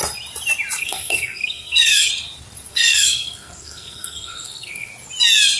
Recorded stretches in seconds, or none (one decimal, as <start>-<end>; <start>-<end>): 0.0-0.8; 2.1-2.7; 4.9-5.6